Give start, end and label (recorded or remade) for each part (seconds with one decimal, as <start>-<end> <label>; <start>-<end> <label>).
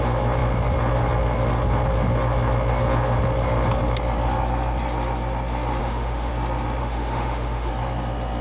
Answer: 0.0-5.8 recorded; 5.8-6.3 remade; 6.3-6.8 recorded; 6.8-7.7 remade; 7.7-8.4 recorded